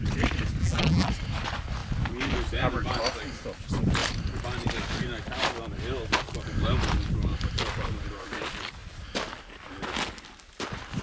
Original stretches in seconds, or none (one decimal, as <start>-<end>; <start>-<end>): 0.0-0.6; 1.1-11.0